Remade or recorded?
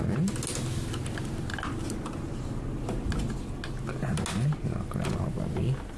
recorded